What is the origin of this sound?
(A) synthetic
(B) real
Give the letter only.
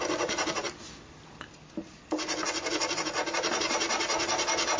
B